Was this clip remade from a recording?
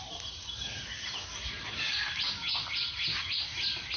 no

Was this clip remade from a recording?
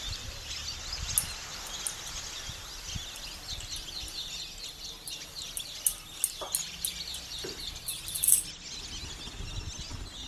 no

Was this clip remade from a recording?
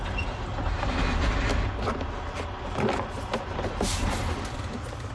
no